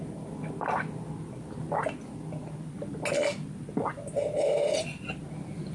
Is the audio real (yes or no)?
yes